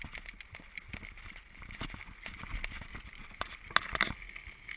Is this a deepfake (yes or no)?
no